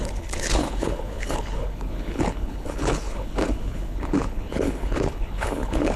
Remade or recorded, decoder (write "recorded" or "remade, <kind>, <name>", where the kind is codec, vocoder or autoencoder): remade, codec, HILCodec